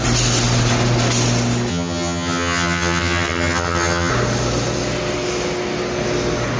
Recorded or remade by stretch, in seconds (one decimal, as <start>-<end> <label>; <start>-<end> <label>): 0.0-1.7 recorded; 1.7-4.1 remade; 4.1-6.6 recorded